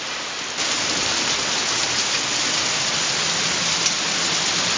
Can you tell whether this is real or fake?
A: real